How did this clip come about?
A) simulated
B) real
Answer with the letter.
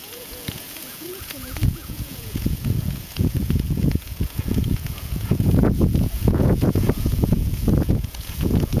A